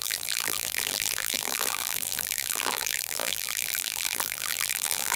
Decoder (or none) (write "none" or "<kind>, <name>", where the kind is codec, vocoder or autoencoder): vocoder, BigVGAN v2